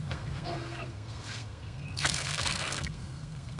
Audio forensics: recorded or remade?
remade